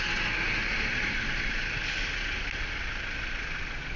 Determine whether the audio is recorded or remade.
recorded